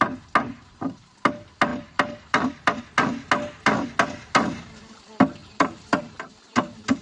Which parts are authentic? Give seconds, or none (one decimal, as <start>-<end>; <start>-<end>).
0.0-1.7; 2.8-5.4; 6.0-7.0